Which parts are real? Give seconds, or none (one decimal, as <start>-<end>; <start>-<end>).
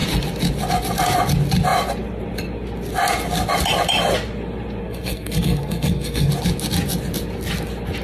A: 0.0-4.8; 6.3-8.0